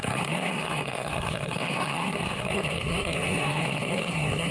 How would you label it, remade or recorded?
remade